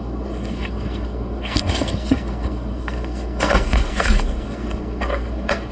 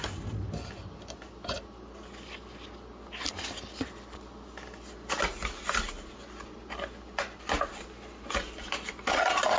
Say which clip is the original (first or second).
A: second